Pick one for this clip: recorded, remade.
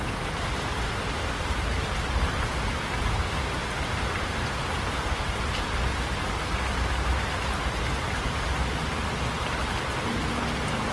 recorded